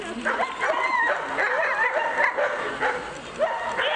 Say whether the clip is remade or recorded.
recorded